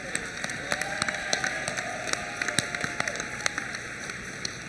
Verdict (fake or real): fake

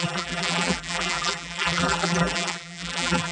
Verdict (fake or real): fake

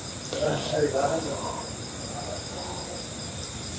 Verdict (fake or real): real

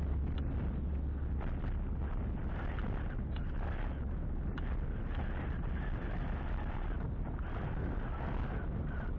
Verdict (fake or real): real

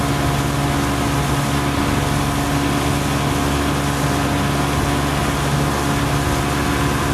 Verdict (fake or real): real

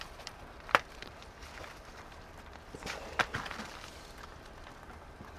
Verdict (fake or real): fake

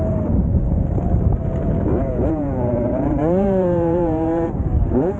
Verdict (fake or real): fake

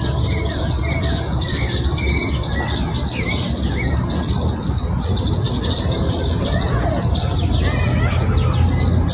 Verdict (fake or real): real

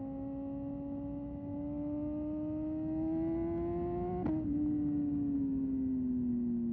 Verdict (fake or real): real